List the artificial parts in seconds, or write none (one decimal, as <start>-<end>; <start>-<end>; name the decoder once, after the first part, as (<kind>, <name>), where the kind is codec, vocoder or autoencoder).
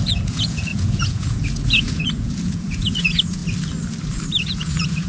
0.0-3.4 (vocoder, Vocos); 4.4-5.1